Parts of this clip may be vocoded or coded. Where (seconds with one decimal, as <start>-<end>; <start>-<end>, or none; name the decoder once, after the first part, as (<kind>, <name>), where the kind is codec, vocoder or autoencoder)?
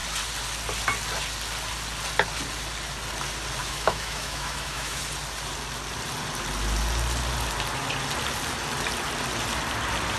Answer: 3.6-5.0 (autoencoder, DAC-VAE)